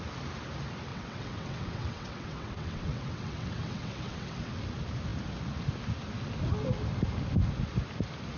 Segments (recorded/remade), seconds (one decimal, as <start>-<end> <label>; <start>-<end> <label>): 0.0-0.9 recorded; 0.9-4.5 remade; 4.5-8.4 recorded